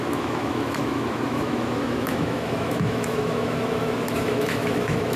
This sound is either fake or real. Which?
fake